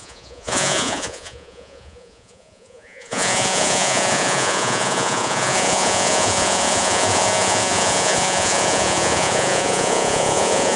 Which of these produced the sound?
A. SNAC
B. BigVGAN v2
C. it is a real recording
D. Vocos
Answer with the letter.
D